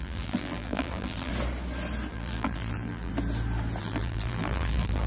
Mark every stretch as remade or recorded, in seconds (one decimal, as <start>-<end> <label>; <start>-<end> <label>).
0.0-1.3 remade; 1.3-2.1 recorded; 2.1-3.1 remade; 3.1-3.8 recorded; 3.8-5.1 remade